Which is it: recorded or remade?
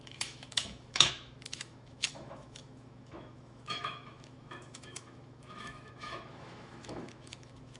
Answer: remade